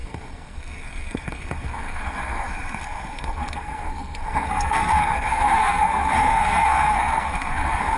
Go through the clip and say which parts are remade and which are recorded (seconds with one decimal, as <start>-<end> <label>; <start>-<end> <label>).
0.0-8.0 remade